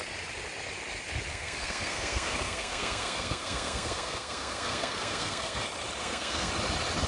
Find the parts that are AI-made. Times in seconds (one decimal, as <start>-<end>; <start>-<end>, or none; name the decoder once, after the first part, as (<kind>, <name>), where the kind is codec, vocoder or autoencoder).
1.3-5.6 (codec, SNAC); 6.0-6.5